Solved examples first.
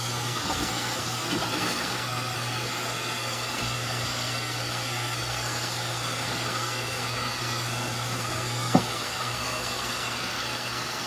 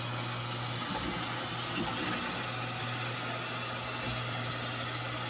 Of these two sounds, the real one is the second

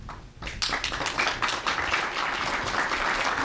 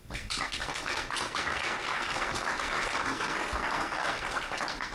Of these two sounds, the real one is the first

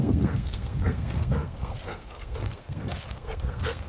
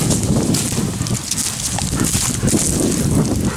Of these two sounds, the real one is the second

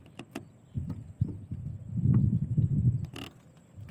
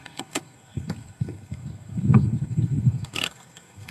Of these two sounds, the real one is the first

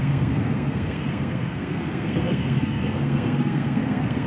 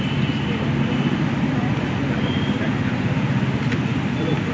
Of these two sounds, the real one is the second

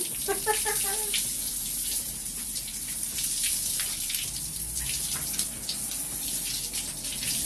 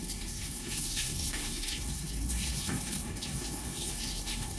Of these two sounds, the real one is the first